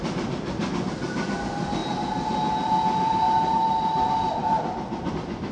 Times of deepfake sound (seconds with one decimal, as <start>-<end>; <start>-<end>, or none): none